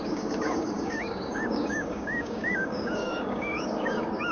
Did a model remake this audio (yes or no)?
yes